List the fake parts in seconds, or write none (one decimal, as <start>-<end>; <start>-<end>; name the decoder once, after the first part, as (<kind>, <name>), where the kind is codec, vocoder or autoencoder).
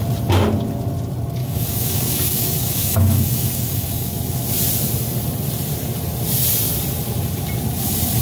1.4-4.1 (codec, DAC)